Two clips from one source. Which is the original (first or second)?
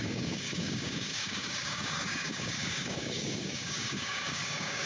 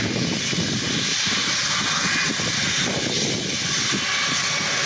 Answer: second